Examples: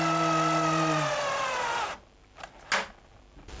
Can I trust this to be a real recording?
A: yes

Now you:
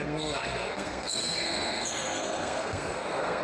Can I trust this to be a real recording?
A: no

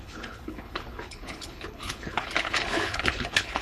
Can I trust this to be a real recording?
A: no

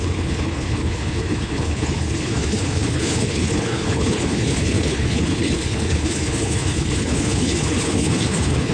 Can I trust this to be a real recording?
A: no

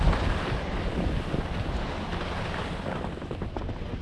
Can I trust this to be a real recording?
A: yes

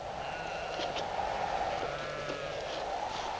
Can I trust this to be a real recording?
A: yes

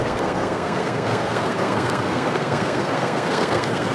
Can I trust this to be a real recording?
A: no